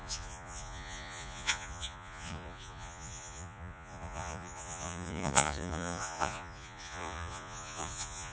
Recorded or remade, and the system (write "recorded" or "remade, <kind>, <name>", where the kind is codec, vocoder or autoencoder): remade, vocoder, Vocos